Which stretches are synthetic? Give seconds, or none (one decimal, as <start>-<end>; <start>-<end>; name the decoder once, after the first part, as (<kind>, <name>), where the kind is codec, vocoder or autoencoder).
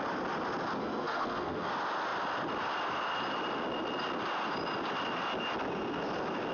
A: 0.8-1.7 (codec, SNAC)